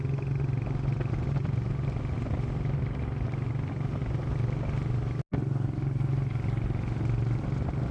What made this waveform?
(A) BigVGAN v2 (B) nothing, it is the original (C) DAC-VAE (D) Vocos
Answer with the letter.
B